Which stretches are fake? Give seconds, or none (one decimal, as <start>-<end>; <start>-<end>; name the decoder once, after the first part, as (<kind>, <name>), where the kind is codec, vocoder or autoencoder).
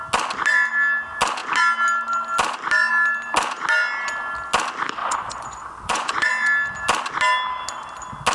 5.0-6.3 (vocoder, Vocos)